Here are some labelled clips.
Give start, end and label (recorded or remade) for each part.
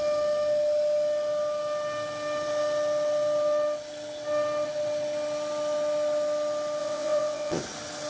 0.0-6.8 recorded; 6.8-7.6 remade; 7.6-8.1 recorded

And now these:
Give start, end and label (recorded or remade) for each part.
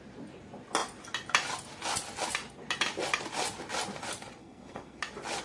0.0-4.4 recorded; 4.4-5.0 remade; 5.0-5.4 recorded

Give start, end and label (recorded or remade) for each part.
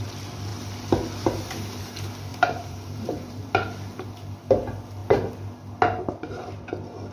0.0-2.3 recorded; 2.3-3.4 remade; 3.4-7.1 recorded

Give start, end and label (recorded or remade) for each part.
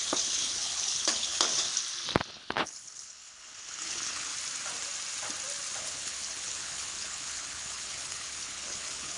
0.0-1.7 remade; 1.7-2.3 recorded; 2.3-4.3 remade; 4.3-5.8 recorded; 5.8-9.2 remade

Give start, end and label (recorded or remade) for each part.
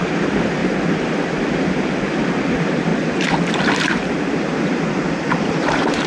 0.0-0.6 remade; 0.6-2.4 recorded; 2.4-2.9 remade; 2.9-4.2 recorded; 4.2-6.1 remade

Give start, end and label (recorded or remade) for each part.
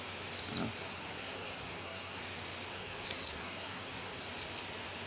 0.0-0.8 recorded; 0.8-2.2 remade; 2.2-2.7 recorded; 2.7-4.2 remade; 4.2-5.1 recorded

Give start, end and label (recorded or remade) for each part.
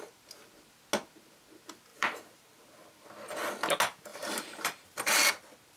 0.0-1.9 recorded; 1.9-2.6 remade; 2.6-4.1 recorded; 4.1-5.3 remade; 5.3-5.8 recorded